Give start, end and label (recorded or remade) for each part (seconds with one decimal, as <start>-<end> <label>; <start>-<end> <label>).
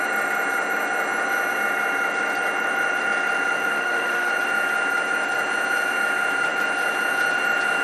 0.0-3.7 recorded; 3.7-4.3 remade; 4.3-7.8 recorded